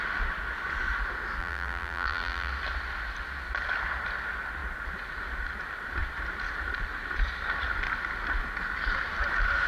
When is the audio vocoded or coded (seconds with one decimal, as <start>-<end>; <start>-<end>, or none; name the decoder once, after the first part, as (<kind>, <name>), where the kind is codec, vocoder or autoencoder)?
1.4-2.5 (vocoder, BigVGAN v2)